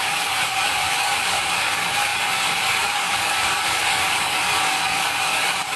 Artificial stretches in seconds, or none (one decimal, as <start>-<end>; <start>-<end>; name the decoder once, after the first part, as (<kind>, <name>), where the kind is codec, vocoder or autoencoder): 0.0-5.8 (codec, DAC)

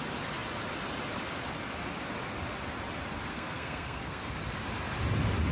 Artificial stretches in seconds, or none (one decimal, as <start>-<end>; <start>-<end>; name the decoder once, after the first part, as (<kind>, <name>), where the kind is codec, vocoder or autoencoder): 3.3-4.3 (codec, SNAC)

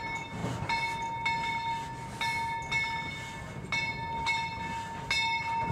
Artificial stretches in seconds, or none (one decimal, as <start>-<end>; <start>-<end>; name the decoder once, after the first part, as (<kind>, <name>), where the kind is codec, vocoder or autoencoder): none

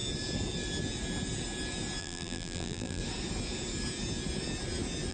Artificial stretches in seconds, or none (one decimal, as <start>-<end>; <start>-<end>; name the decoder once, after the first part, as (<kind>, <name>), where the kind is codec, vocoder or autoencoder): 2.0-3.0 (vocoder, BigVGAN v2)